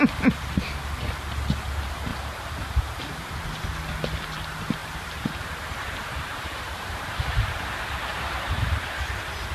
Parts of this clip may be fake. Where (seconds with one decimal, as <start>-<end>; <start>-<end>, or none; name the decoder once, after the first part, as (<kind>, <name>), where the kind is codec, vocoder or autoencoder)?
2.1-3.2 (vocoder, BigVGAN v2); 4.8-7.5; 8.1-9.5